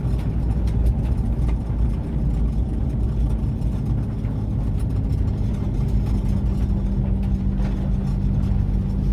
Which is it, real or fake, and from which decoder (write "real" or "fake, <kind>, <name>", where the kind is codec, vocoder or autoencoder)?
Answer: real